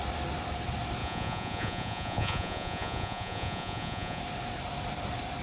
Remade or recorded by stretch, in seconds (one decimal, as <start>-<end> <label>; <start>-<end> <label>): 0.0-1.0 recorded; 1.0-4.2 remade; 4.2-5.4 recorded